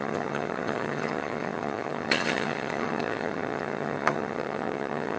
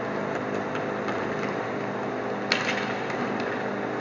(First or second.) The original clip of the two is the second